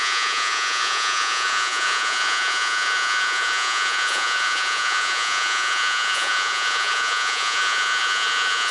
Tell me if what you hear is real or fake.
fake